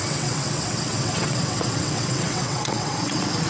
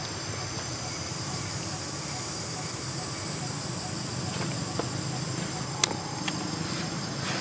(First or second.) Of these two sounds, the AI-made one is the first